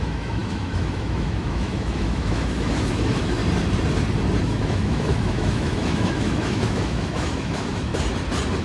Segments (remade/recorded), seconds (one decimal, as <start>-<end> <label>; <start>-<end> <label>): 0.0-3.4 remade; 3.4-4.4 recorded; 4.4-7.9 remade; 7.9-8.6 recorded